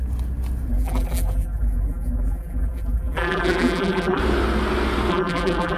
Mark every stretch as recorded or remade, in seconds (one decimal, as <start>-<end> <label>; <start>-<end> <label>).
0.0-0.7 recorded; 0.7-4.2 remade; 4.2-5.1 recorded; 5.1-5.8 remade

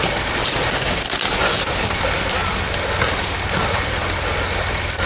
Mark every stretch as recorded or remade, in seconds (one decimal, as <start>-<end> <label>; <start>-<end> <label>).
0.0-5.1 recorded

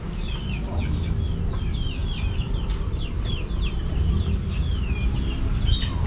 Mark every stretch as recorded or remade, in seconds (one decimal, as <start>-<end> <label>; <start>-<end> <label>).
0.0-6.1 recorded